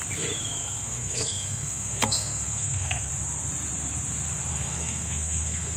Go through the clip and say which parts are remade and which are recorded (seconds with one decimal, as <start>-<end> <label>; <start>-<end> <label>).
0.0-0.6 recorded; 0.6-3.1 remade; 3.1-4.5 recorded; 4.5-5.8 remade